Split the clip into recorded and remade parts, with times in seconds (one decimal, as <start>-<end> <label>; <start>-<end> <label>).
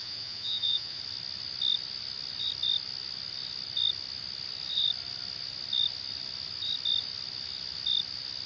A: 0.0-1.0 remade; 1.0-8.5 recorded